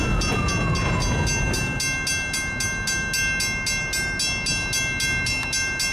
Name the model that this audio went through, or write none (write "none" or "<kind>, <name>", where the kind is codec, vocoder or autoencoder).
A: none